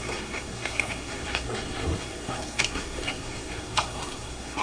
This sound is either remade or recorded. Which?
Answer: remade